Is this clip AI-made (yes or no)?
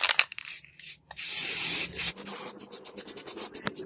yes